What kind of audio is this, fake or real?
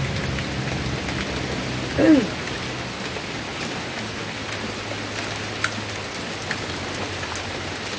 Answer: real